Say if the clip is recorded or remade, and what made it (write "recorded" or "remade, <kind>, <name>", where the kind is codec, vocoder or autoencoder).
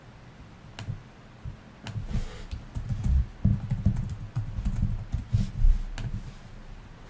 recorded